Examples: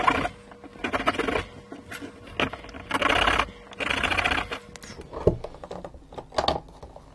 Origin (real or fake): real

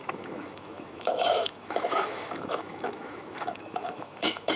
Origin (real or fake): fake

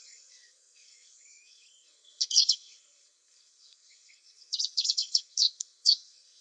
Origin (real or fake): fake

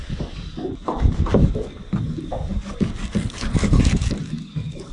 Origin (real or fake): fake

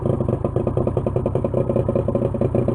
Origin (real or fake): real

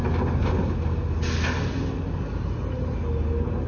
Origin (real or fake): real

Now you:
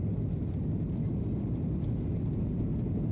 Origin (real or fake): real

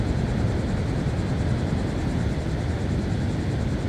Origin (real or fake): real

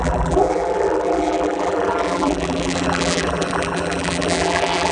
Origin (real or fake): fake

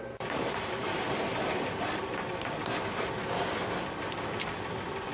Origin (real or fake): real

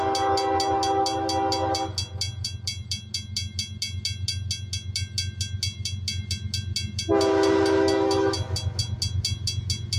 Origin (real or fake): real